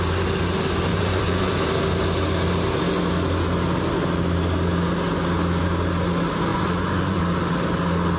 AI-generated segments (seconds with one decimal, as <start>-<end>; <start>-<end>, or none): 0.9-1.5; 6.5-7.2